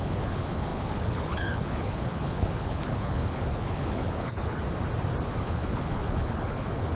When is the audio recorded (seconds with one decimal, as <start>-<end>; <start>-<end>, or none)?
4.6-5.4